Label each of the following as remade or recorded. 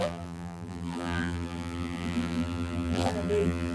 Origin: remade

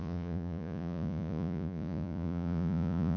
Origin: remade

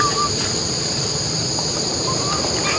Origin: recorded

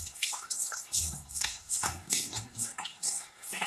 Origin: remade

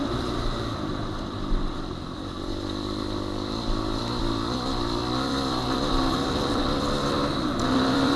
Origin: remade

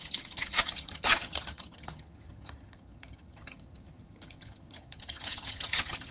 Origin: remade